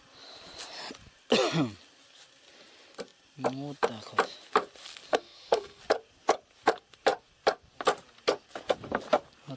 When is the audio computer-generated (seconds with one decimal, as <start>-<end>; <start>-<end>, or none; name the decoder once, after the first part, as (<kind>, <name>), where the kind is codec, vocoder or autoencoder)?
5.1-5.8 (codec, SNAC)